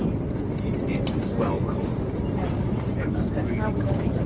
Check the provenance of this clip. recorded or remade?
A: recorded